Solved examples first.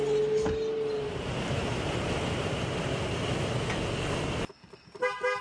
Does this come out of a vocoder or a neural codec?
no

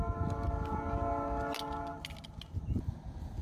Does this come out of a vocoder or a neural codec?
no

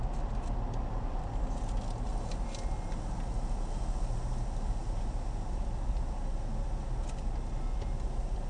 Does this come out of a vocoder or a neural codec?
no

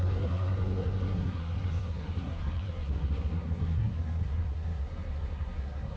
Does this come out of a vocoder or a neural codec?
yes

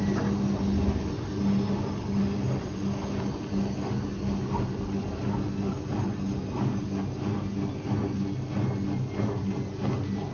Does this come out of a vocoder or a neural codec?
no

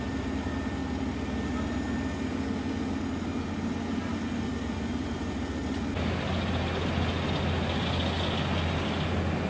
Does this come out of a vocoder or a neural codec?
no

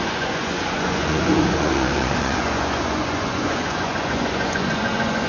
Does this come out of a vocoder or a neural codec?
yes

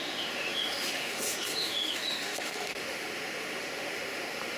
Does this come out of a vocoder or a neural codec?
yes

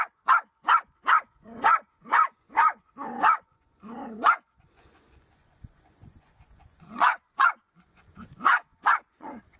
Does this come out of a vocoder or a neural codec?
yes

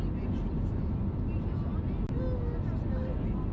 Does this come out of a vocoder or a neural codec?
no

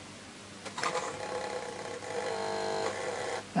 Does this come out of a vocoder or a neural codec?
no